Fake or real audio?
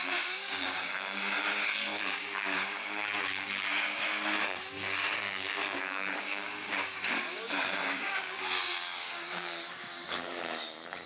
fake